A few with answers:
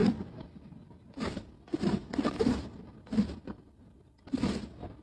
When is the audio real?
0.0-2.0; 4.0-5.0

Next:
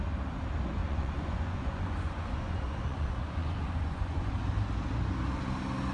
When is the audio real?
0.0-0.8; 4.3-5.9

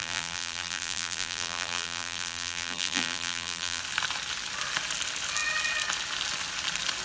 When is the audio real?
3.8-7.0

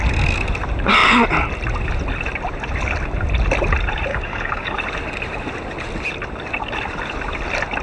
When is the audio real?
0.0-4.1; 4.8-7.8

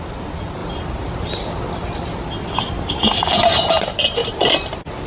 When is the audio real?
0.0-5.1

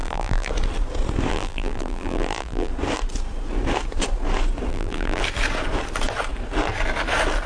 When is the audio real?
0.5-1.3; 2.7-4.7; 5.2-7.5